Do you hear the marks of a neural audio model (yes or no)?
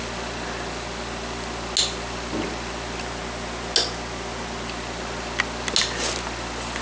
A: no